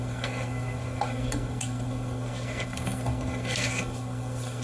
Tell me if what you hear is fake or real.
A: fake